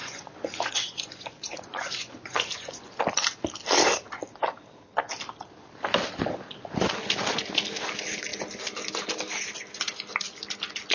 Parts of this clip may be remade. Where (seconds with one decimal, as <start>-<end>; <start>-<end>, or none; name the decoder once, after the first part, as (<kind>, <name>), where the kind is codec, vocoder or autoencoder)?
0.0-3.0 (vocoder, Vocos)